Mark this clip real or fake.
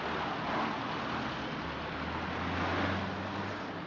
real